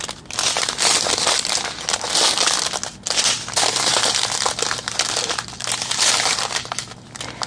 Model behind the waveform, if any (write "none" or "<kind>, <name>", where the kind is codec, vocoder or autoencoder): none